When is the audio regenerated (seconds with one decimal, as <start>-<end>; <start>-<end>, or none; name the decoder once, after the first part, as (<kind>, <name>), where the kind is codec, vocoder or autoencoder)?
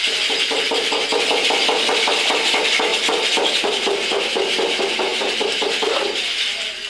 none